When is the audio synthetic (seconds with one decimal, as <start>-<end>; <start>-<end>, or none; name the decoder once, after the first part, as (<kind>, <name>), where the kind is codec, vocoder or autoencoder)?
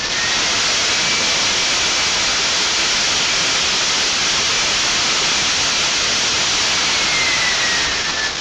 none